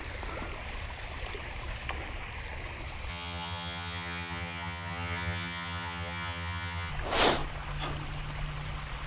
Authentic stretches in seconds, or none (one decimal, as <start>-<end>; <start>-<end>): 0.0-3.1; 6.9-9.1